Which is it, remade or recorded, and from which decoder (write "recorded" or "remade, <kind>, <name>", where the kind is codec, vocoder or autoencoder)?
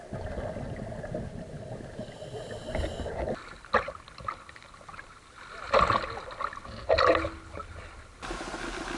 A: recorded